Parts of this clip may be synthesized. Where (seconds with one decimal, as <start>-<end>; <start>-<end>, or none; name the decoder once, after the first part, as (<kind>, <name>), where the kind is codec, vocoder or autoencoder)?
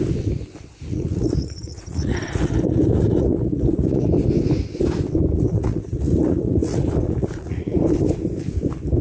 0.9-4.1 (vocoder, Vocos); 5.3-7.8